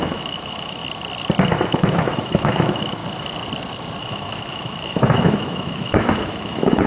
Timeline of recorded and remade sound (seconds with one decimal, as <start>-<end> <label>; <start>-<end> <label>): 0.0-0.8 remade; 0.8-1.5 recorded; 1.5-3.0 remade; 3.0-4.0 recorded; 4.0-6.9 remade